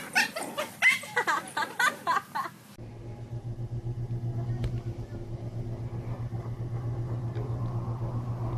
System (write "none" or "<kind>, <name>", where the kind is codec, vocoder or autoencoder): none